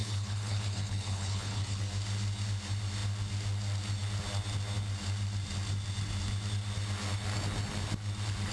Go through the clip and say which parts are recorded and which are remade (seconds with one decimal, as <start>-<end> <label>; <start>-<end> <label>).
0.0-1.8 remade; 1.8-8.5 recorded